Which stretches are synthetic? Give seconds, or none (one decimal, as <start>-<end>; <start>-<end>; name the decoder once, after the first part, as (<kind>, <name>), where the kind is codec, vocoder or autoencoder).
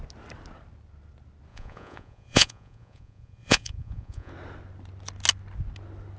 1.5-4.3 (vocoder, Vocos)